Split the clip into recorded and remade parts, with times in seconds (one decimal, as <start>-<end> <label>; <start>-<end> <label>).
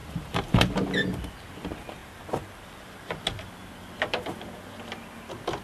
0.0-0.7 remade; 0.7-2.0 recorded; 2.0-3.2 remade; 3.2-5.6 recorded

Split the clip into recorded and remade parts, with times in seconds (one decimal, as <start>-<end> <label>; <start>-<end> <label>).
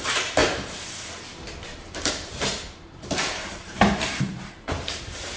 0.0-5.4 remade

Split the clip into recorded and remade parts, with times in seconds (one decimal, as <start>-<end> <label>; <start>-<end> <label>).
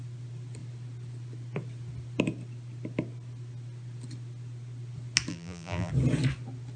0.0-5.3 recorded; 5.3-5.9 remade; 5.9-6.8 recorded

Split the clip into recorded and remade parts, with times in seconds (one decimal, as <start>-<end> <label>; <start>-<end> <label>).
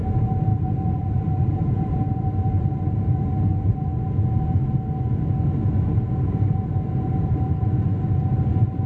0.0-3.9 remade; 3.9-6.3 recorded; 6.3-8.9 remade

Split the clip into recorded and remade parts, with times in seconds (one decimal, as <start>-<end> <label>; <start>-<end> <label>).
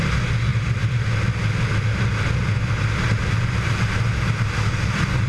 0.0-5.3 recorded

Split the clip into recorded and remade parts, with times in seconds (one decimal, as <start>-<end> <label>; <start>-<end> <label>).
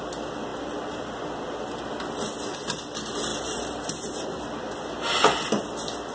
0.0-0.5 recorded; 0.5-1.1 remade; 1.1-3.3 recorded; 3.3-4.4 remade; 4.4-6.1 recorded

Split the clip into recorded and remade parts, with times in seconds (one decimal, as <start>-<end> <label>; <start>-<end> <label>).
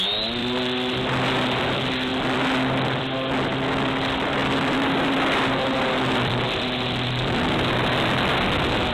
0.0-0.4 recorded; 0.4-1.1 remade; 1.1-2.1 recorded; 2.1-3.0 remade; 3.0-4.4 recorded; 4.4-7.7 remade; 7.7-8.9 recorded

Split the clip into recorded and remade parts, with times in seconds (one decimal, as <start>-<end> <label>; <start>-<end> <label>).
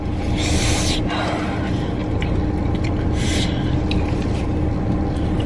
0.0-2.0 recorded; 2.0-5.5 remade